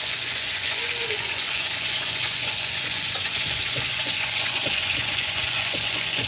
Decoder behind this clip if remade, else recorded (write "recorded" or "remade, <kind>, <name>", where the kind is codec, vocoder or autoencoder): remade, vocoder, Vocos